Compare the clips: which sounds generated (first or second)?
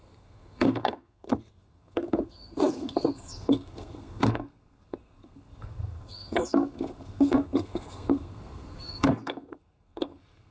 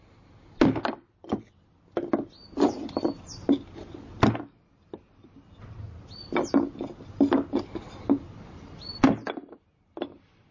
first